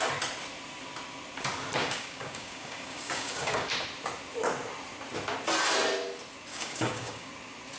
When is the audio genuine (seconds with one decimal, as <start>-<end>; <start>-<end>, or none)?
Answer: 0.0-1.8; 3.7-6.5; 7.3-7.8

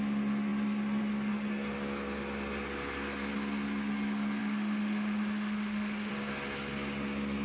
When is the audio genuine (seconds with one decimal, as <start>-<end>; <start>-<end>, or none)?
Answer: 0.0-4.4; 6.1-7.4

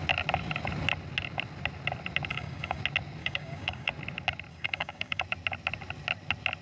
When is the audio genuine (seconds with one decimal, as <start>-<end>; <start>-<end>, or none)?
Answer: 0.0-2.3; 2.8-3.2; 3.9-4.5; 5.2-6.6

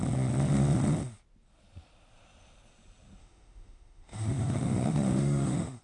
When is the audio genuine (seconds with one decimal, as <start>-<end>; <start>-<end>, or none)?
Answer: 0.0-3.2

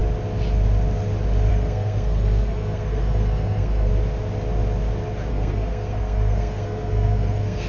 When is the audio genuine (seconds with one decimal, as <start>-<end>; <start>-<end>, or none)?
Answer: 0.0-1.5; 3.9-5.3

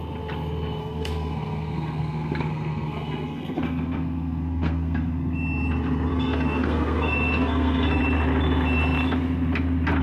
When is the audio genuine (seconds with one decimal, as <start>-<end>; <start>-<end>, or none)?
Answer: 0.0-0.8; 5.3-6.1; 8.0-10.0